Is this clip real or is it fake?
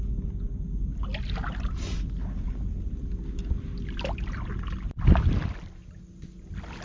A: real